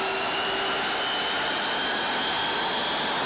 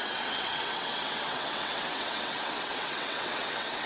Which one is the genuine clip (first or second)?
first